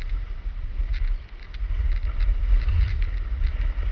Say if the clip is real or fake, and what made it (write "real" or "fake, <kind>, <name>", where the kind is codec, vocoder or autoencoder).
real